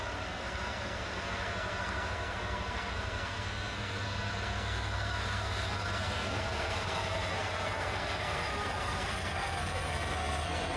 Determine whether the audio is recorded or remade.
remade